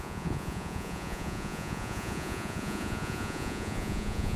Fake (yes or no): yes